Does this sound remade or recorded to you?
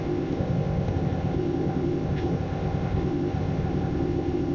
remade